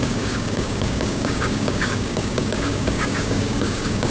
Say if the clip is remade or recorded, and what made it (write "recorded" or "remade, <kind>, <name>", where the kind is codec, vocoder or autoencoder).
remade, codec, DAC